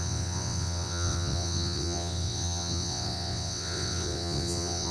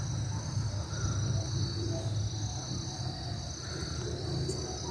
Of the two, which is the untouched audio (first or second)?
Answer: second